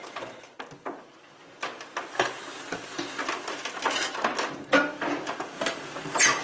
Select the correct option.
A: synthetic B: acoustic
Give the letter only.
B